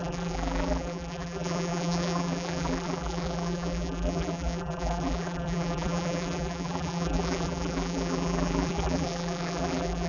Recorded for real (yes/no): no